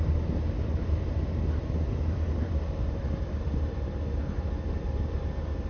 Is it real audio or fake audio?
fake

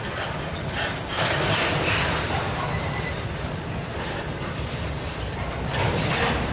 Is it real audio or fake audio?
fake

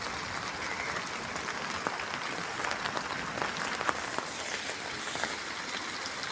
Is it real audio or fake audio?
real